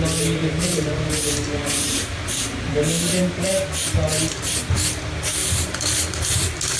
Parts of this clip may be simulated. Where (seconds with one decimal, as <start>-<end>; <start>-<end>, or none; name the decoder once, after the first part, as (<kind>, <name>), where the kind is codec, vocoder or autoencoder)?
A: 0.4-2.2 (vocoder, BigVGAN v2); 5.4-6.8